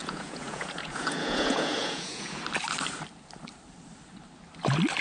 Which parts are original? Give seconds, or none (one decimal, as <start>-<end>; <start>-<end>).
2.4-5.0